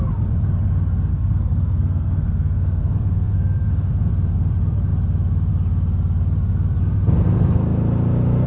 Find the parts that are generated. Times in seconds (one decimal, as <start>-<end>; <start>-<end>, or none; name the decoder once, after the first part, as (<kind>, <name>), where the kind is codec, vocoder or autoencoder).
1.1-4.1 (codec, SNAC)